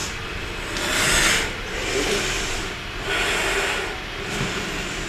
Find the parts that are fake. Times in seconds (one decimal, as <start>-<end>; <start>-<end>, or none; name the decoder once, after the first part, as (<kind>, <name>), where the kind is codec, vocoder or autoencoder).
none